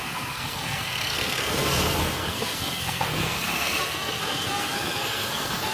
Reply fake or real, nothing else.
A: fake